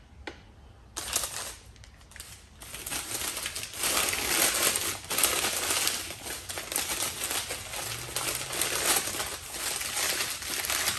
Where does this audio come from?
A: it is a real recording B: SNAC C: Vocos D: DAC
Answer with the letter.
A